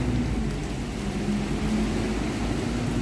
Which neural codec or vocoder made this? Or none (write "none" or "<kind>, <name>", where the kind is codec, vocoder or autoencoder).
none